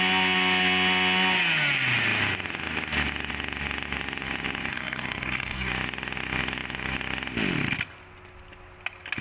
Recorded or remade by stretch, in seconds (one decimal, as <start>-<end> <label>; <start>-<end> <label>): 0.0-4.7 recorded; 4.7-5.7 remade; 5.7-9.2 recorded